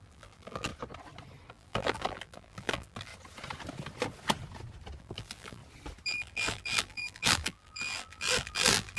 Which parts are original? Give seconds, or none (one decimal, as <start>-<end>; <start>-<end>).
0.7-1.5; 3.1-5.0; 5.6-6.1